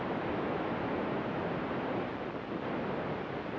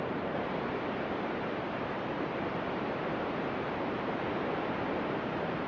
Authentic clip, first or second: first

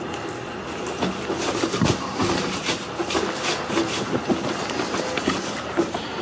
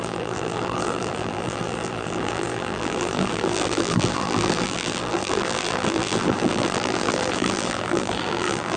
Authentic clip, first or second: first